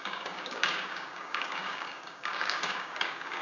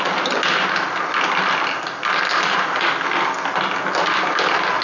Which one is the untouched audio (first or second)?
second